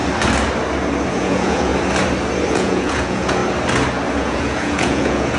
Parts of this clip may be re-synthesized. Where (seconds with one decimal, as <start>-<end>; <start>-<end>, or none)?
1.1-1.7; 2.5-3.4; 4.1-5.4